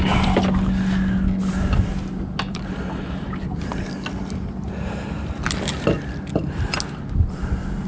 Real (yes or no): yes